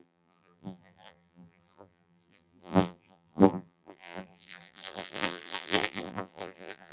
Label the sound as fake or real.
fake